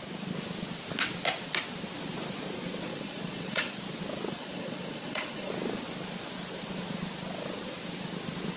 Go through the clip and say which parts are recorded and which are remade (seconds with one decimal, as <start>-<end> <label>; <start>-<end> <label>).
0.0-2.9 recorded; 2.9-3.7 remade; 3.7-4.4 recorded; 4.4-5.5 remade; 5.5-8.6 recorded